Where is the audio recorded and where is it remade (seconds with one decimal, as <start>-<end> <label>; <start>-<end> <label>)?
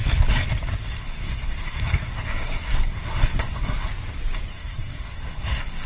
0.0-1.0 recorded; 1.0-3.9 remade; 3.9-4.5 recorded; 4.5-5.9 remade